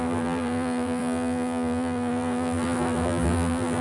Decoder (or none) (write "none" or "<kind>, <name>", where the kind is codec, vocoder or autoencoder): vocoder, BigVGAN v2